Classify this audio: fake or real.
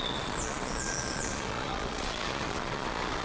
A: fake